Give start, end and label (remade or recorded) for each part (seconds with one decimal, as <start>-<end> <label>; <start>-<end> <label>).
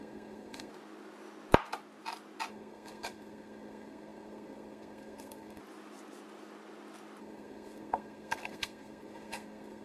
0.0-0.7 remade; 0.7-2.5 recorded; 2.5-5.6 remade; 5.6-7.2 recorded; 7.2-9.8 remade